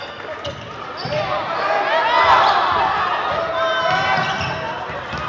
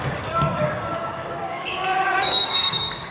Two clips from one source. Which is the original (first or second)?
first